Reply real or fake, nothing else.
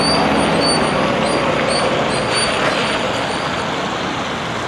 real